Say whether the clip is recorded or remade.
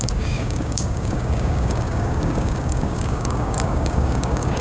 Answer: remade